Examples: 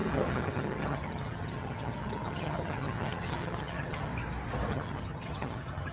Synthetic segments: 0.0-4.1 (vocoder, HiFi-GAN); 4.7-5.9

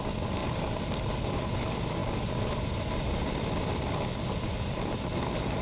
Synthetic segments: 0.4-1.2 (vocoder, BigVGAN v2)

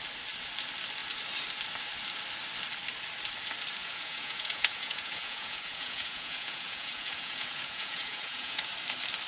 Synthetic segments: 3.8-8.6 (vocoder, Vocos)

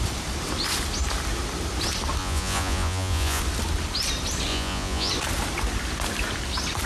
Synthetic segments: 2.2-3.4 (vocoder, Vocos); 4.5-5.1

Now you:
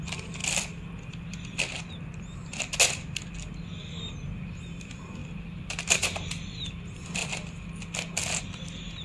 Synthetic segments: 0.4-1.9 (vocoder, BigVGAN v2); 5.2-6.7; 7.2-8.4